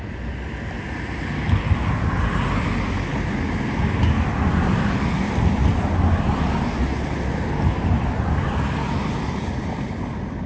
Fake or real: real